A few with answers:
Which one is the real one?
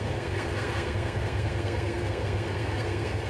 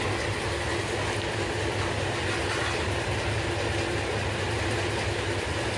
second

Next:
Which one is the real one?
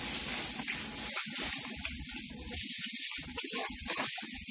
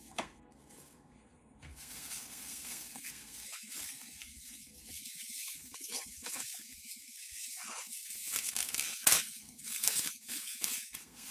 first